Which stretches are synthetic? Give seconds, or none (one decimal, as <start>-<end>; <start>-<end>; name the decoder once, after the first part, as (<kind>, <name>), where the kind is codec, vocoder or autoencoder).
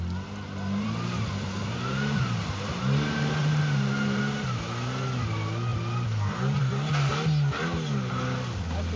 1.6-2.4 (vocoder, BigVGAN v2); 3.4-4.2